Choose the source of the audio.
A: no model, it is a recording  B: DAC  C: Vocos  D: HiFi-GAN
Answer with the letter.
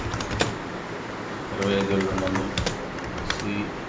A